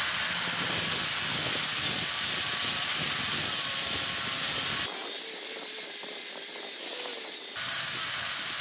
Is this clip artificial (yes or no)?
no